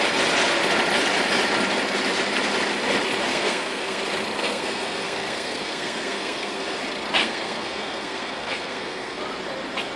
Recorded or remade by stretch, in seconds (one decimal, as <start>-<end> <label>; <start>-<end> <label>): 0.0-3.3 recorded; 3.3-4.0 remade; 4.0-4.4 recorded; 4.4-6.8 remade; 6.8-7.2 recorded; 7.2-9.2 remade; 9.2-10.0 recorded